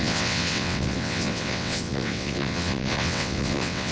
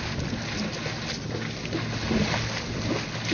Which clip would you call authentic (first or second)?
second